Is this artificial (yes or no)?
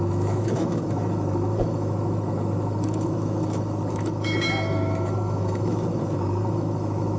yes